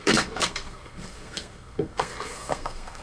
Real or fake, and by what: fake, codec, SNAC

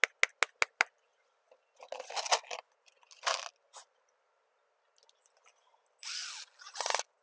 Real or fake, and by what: real